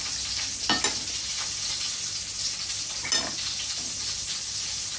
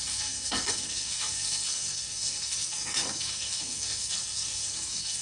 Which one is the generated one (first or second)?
second